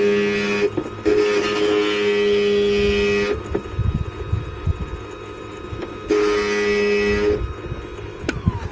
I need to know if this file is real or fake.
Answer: real